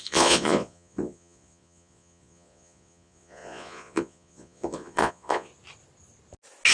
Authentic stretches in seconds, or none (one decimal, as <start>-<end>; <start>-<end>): 5.5-6.7